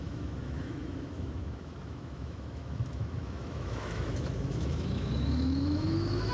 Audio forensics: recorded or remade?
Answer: remade